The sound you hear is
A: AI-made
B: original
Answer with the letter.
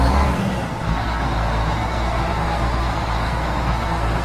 A